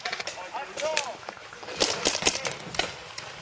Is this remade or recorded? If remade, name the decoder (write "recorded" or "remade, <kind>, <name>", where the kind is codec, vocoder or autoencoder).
recorded